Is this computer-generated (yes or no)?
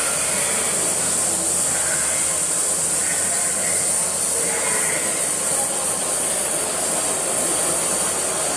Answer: no